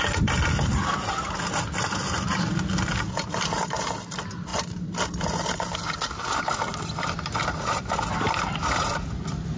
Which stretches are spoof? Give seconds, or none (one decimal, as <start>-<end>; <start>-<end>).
none